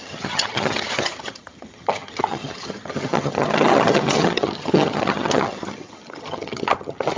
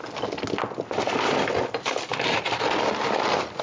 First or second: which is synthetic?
first